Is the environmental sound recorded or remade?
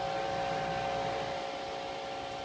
recorded